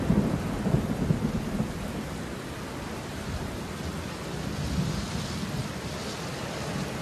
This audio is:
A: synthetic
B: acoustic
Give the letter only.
B